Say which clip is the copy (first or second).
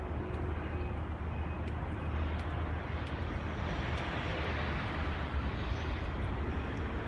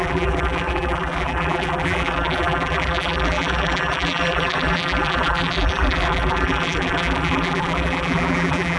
second